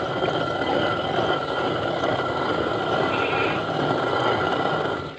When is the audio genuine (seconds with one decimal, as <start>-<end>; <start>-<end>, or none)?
0.0-5.2